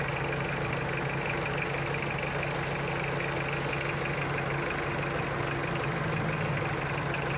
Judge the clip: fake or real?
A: real